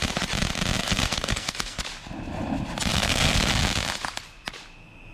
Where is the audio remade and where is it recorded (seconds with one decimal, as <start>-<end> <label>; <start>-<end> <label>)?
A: 0.0-0.8 recorded; 0.8-1.8 remade; 1.8-2.9 recorded; 2.9-3.5 remade; 3.5-5.1 recorded